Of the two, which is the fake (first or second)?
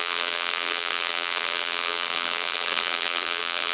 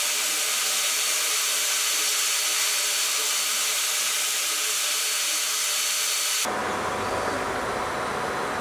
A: first